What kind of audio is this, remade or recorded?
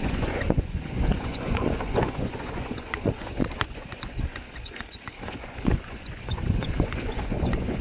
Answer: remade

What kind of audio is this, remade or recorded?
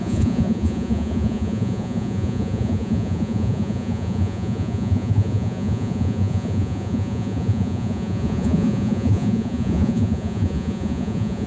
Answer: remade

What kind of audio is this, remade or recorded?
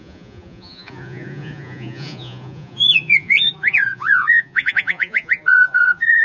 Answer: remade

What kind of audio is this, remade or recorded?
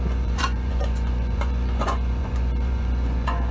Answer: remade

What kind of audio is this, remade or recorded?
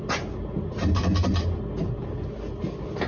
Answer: recorded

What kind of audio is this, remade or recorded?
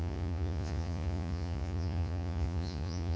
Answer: remade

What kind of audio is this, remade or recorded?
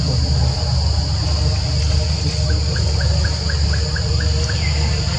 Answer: recorded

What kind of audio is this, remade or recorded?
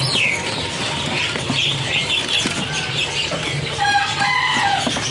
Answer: recorded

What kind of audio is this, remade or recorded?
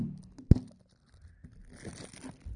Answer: recorded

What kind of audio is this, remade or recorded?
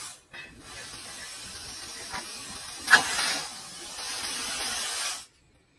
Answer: recorded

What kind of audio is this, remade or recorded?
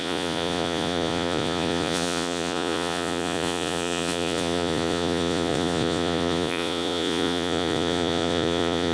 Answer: remade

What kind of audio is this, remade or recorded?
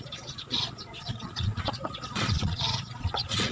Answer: remade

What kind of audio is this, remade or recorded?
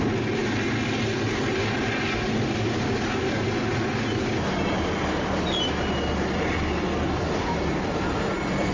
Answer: recorded